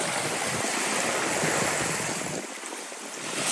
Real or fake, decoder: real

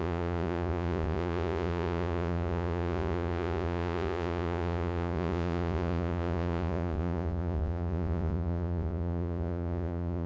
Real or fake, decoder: fake, vocoder, Vocos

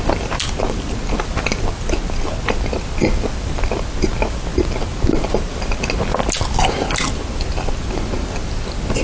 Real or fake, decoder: real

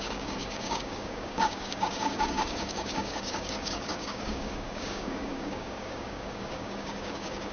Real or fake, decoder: fake, codec, DAC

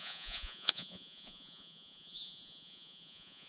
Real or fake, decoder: fake, vocoder, Vocos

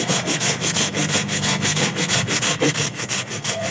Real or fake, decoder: fake, codec, SNAC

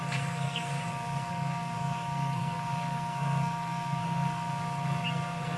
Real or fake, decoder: fake, codec, SNAC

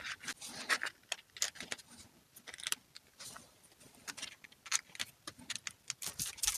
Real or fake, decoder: real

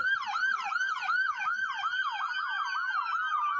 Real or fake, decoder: real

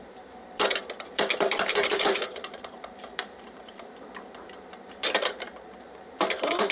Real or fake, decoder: fake, vocoder, BigVGAN v2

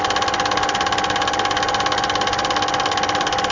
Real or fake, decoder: real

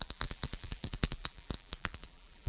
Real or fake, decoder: fake, vocoder, BigVGAN v2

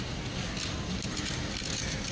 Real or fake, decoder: real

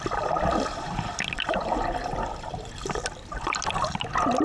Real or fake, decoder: real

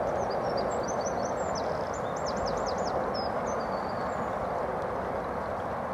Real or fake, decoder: real